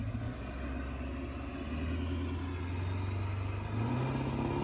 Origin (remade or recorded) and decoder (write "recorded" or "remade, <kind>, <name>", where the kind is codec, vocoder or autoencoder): recorded